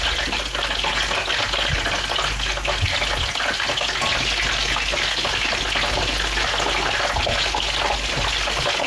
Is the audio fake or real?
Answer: real